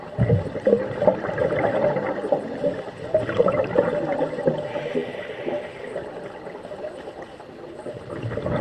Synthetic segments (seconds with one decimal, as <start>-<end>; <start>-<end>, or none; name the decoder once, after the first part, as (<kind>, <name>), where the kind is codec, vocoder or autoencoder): 3.4-4.5 (vocoder, BigVGAN v2)

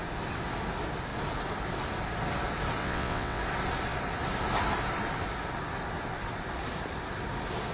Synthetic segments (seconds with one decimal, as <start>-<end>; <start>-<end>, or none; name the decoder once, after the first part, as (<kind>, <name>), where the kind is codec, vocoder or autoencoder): 2.8-3.4 (vocoder, WaveNeXt)

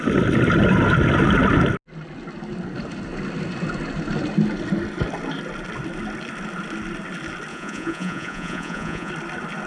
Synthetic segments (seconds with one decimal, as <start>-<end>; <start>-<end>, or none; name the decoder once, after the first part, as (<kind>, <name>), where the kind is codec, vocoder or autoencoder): 7.5-9.1 (vocoder, Vocos)